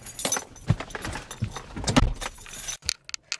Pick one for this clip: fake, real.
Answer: real